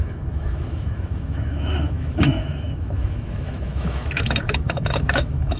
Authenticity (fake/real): fake